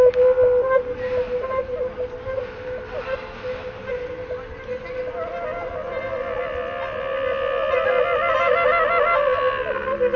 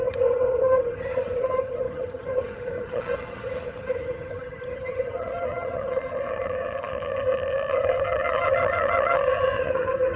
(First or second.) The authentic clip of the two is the first